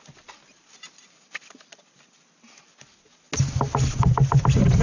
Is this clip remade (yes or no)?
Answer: no